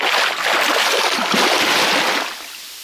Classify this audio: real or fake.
real